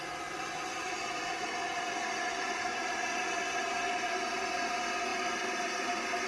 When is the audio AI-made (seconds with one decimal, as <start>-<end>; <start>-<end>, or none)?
none